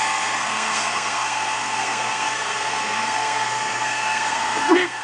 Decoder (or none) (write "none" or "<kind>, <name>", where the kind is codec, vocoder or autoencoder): codec, SNAC